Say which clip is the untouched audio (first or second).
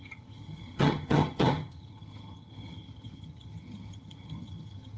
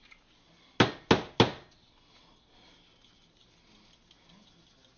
second